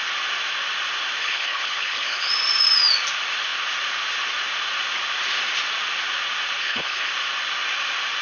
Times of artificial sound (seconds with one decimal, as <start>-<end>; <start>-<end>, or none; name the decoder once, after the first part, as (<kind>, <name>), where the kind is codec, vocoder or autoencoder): 1.2-2.3 (codec, HILCodec); 6.6-7.1